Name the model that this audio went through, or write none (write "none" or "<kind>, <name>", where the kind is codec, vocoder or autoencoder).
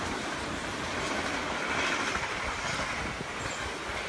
none